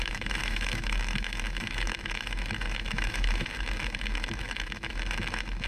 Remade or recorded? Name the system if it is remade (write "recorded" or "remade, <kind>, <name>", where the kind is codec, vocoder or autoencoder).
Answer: remade, autoencoder, DAC-VAE